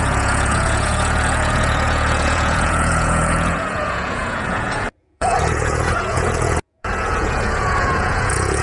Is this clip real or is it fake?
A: fake